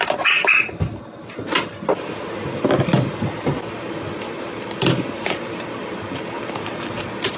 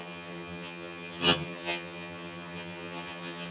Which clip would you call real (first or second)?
first